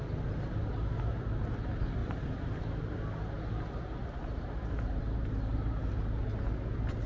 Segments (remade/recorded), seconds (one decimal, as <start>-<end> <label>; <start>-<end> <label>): 0.0-2.0 recorded; 2.0-2.6 remade; 2.6-4.0 recorded; 4.0-5.9 remade; 5.9-7.1 recorded